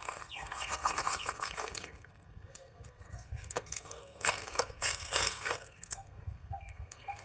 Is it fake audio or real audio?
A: fake